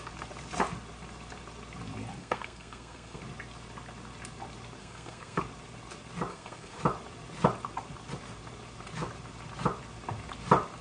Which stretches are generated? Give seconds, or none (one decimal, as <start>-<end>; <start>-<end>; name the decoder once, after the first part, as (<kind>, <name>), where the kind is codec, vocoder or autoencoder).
2.2-3.2 (codec, SNAC); 4.8-5.4; 6.3-6.8